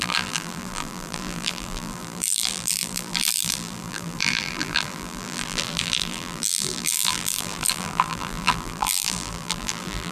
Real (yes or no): no